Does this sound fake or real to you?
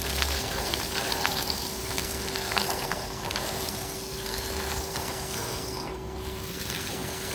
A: fake